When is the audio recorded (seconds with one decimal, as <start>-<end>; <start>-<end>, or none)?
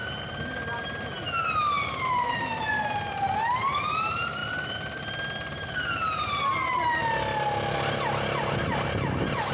0.0-9.5